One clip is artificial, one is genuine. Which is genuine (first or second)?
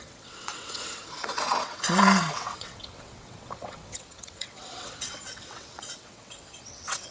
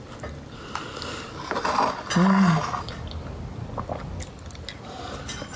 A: second